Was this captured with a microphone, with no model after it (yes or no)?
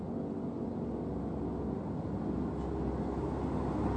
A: yes